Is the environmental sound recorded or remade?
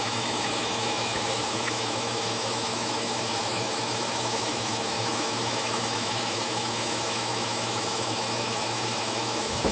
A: remade